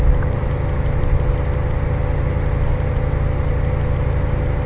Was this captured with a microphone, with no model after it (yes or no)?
yes